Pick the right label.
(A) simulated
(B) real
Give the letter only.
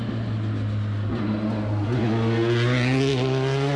B